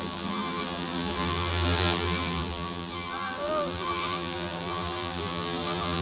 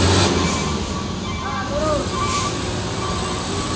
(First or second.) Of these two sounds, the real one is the second